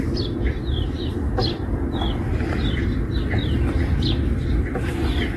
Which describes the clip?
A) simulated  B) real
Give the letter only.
B